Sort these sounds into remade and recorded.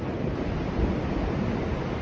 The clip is recorded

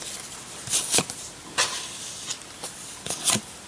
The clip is remade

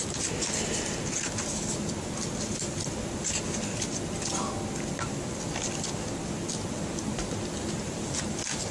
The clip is recorded